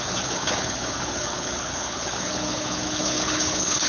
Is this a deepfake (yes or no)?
yes